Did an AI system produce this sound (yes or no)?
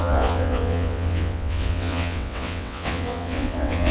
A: yes